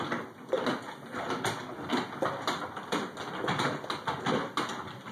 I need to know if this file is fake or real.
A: real